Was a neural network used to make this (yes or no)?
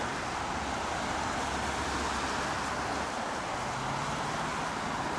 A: no